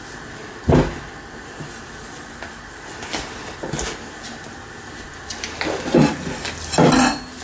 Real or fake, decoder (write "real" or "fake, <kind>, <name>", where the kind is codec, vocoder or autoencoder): real